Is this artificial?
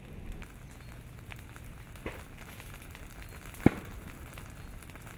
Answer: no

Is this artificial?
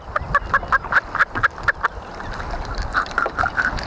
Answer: no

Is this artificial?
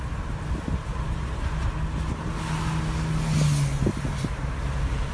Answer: no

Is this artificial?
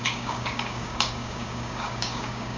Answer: yes